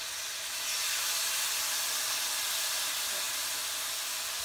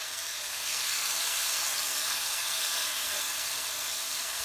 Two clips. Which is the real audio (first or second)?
first